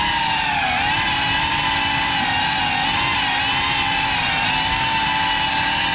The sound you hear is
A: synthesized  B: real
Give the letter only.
B